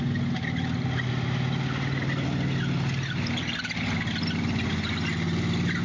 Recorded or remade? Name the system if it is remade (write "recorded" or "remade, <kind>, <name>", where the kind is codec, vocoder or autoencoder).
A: recorded